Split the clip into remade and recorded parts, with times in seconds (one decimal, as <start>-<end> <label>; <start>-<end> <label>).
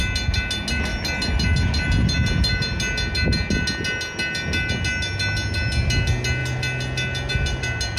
0.0-8.0 recorded